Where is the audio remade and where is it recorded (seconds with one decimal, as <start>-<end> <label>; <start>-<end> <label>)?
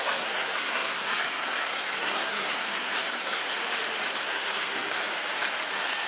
0.0-3.6 remade; 3.6-4.2 recorded; 4.2-5.0 remade; 5.0-6.1 recorded